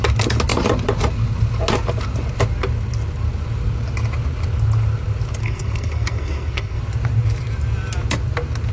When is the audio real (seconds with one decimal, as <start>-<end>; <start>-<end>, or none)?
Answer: 0.0-5.4; 6.8-8.7